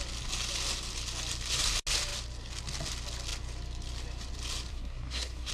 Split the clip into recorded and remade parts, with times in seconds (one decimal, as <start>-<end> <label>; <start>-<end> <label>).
0.0-4.7 recorded; 4.7-5.5 remade